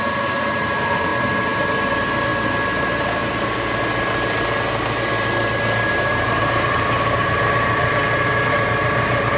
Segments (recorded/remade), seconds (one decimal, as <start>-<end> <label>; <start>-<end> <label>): 0.0-1.1 remade; 1.1-1.9 recorded; 1.9-2.3 remade; 2.3-2.8 recorded; 2.8-3.2 remade; 3.2-5.9 recorded; 5.9-8.0 remade; 8.0-8.5 recorded; 8.5-9.4 remade